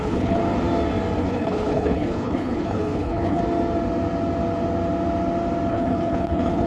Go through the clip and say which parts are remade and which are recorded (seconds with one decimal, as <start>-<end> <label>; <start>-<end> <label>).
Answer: 0.0-0.4 remade; 0.4-1.2 recorded; 1.2-3.4 remade; 3.4-5.7 recorded; 5.7-6.7 remade

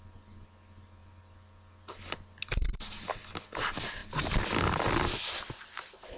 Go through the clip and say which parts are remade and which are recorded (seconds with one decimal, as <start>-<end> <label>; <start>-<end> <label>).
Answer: 0.0-6.2 recorded

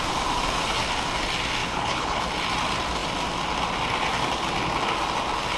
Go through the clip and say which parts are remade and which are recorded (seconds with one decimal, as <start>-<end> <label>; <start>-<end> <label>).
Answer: 0.0-1.6 recorded; 1.6-2.2 remade; 2.2-5.6 recorded

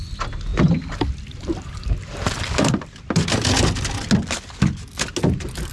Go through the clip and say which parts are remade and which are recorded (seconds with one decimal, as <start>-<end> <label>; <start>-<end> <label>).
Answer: 0.0-5.7 recorded

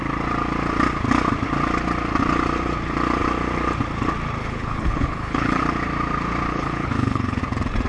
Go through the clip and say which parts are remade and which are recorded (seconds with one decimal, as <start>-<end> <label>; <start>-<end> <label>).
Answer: 0.0-4.4 recorded; 4.4-5.6 remade; 5.6-6.5 recorded; 6.5-7.4 remade; 7.4-7.9 recorded

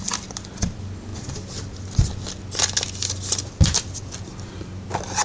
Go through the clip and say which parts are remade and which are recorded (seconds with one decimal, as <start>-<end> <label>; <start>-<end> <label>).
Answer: 0.0-5.2 recorded

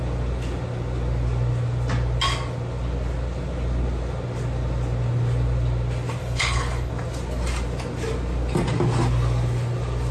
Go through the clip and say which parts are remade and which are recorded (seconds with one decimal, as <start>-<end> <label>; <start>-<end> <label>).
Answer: 0.0-6.2 recorded; 6.2-6.9 remade; 6.9-10.1 recorded